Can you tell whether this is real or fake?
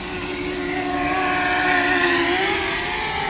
real